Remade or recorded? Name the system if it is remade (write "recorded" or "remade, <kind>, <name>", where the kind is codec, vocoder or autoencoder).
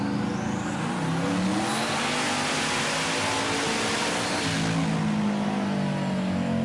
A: recorded